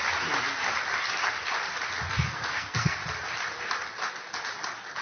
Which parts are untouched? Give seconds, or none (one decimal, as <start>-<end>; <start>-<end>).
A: 0.0-2.1; 3.0-5.0